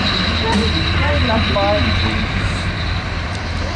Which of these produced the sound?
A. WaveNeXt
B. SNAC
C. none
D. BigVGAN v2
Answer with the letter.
C